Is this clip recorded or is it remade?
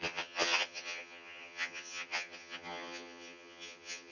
remade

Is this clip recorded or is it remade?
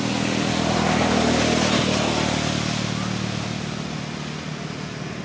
recorded